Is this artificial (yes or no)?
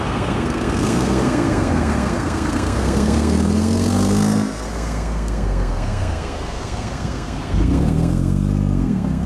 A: yes